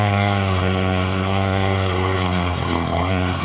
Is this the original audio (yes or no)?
no